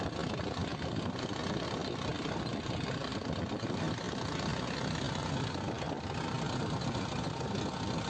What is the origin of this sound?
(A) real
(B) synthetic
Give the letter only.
A